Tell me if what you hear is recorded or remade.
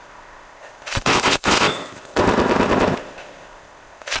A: remade